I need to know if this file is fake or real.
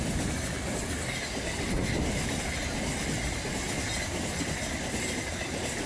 real